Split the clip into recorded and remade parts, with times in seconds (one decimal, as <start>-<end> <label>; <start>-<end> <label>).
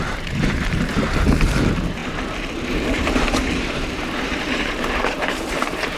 0.0-0.9 remade; 0.9-1.4 recorded; 1.4-6.0 remade